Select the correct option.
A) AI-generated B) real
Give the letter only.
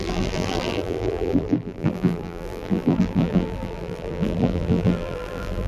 A